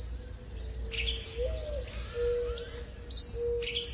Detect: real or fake real